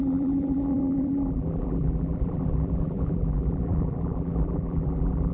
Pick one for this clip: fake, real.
fake